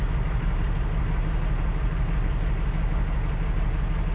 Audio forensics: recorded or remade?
recorded